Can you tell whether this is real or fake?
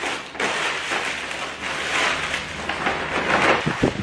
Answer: real